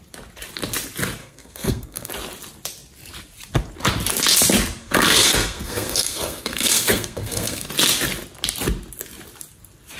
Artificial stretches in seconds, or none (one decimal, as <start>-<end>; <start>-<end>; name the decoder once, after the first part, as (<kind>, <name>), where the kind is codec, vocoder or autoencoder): 1.2-2.1 (codec, SNAC); 4.8-7.7